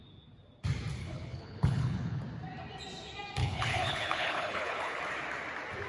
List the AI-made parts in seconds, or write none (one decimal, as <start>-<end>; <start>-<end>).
1.0-2.2; 3.4-5.0